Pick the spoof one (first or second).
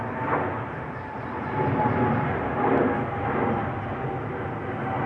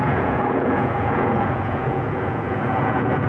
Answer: second